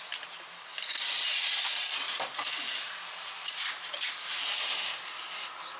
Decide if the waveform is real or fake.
real